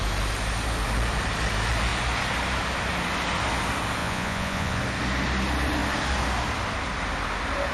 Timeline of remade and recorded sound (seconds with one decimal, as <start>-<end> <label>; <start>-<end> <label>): 0.0-4.0 recorded; 4.0-4.8 remade; 4.8-7.7 recorded